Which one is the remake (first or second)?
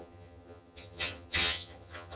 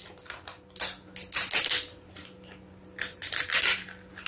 first